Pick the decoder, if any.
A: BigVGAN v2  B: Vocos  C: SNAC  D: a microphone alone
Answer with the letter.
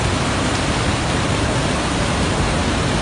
A